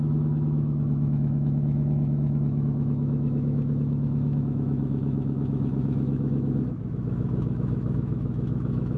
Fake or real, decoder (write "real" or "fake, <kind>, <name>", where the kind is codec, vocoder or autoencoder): fake, autoencoder, DAC-VAE